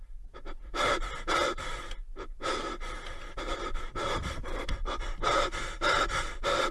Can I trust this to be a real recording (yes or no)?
no